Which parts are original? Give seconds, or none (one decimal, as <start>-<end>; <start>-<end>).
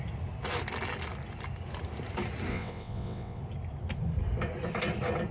0.0-2.5; 3.4-5.3